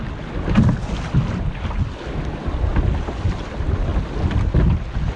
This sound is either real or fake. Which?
real